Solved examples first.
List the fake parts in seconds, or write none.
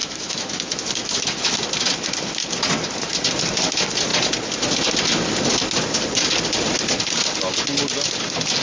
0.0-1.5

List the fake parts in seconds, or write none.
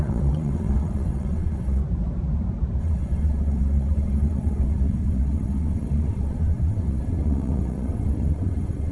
0.0-1.8; 2.8-8.9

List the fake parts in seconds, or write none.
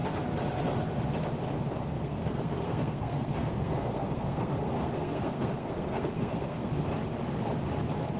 1.8-6.7